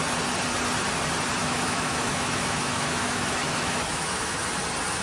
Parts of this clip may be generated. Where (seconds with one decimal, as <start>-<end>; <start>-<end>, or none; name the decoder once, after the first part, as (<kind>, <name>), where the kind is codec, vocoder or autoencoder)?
1.4-4.4 (autoencoder, DAC-VAE)